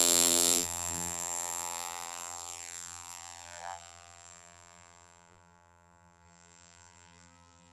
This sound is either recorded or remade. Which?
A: remade